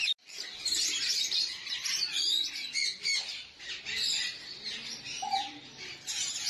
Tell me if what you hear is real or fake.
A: real